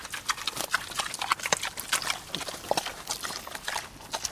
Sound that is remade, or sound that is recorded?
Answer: recorded